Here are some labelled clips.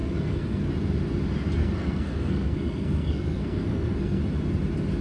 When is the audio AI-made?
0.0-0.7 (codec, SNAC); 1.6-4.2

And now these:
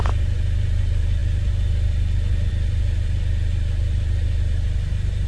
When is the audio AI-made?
none